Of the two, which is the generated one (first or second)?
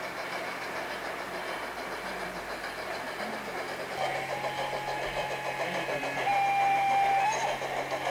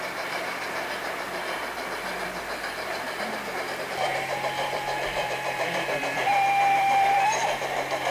second